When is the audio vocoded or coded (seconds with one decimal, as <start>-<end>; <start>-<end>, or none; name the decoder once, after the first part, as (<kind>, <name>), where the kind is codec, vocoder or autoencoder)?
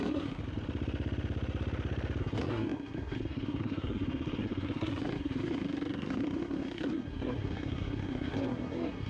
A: 0.0-0.4 (codec, SNAC); 2.2-9.1